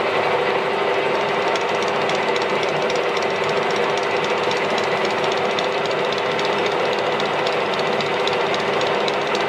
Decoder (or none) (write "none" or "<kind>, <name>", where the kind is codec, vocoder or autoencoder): none